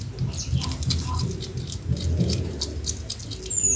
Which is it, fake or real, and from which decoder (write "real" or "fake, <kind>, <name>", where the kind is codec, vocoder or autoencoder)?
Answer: real